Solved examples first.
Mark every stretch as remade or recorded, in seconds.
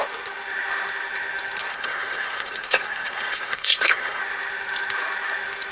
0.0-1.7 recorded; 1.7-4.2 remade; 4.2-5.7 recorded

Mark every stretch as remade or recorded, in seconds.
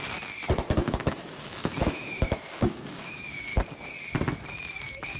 0.0-0.7 recorded; 0.7-3.5 remade; 3.5-4.8 recorded; 4.8-5.2 remade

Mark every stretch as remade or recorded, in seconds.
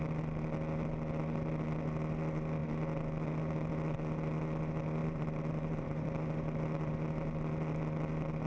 0.0-5.0 recorded; 5.0-6.9 remade; 6.9-8.5 recorded